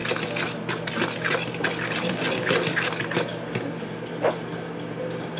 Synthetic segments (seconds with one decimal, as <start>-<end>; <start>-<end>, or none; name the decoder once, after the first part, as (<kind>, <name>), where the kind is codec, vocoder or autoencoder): none

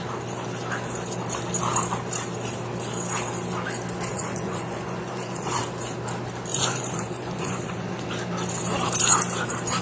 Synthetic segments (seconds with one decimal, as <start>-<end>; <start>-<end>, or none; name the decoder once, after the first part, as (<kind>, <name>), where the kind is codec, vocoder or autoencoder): 4.1-5.6 (vocoder, Vocos); 6.5-8.1

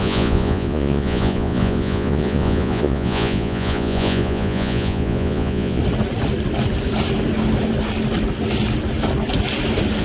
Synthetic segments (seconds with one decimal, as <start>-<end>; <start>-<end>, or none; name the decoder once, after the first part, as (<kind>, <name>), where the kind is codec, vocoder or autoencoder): 0.0-5.8 (vocoder, Vocos)

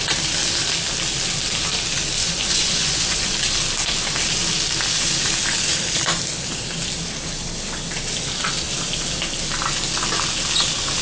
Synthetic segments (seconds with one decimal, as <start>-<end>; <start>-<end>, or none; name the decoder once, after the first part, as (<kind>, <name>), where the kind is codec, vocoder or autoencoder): 2.2-3.3 (vocoder, Vocos)